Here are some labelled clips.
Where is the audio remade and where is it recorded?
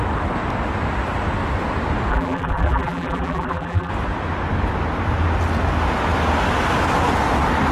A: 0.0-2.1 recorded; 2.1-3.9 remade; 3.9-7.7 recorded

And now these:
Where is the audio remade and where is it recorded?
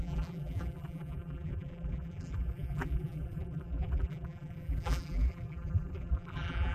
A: 0.0-6.7 remade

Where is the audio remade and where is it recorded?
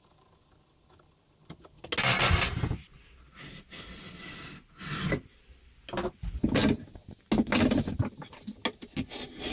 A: 0.0-9.5 recorded